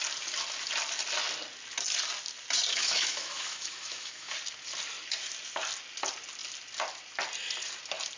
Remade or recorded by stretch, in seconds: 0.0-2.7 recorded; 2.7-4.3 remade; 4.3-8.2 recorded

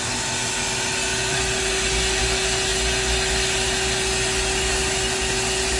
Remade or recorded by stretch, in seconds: 0.0-5.8 recorded

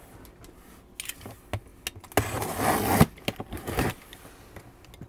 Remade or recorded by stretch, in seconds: 0.0-5.1 recorded